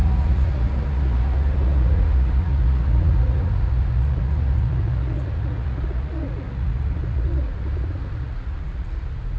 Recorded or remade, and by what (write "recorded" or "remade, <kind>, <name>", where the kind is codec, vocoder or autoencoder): remade, vocoder, Vocos